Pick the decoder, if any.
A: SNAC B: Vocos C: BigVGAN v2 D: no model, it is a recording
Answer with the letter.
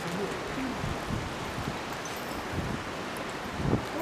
D